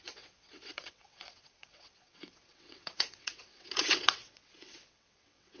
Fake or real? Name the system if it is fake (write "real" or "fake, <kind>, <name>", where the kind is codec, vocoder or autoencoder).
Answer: fake, vocoder, WaveNeXt